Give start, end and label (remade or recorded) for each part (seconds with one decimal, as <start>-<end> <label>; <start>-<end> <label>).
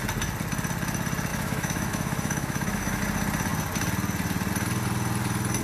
0.0-1.3 recorded; 1.3-3.0 remade; 3.0-5.6 recorded